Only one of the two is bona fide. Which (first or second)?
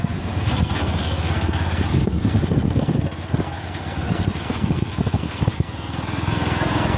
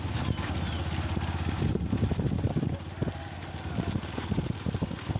second